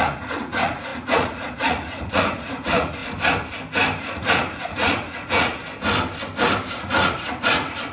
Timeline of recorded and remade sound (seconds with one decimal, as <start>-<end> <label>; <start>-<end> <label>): 0.0-3.0 remade; 3.0-4.0 recorded; 4.0-5.6 remade; 5.6-6.7 recorded; 6.7-7.9 remade